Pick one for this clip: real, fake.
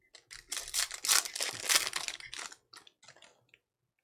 real